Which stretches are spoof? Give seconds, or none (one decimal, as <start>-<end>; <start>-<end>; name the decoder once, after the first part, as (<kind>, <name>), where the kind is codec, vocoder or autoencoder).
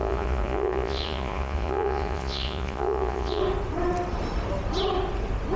0.0-3.4 (vocoder, Vocos)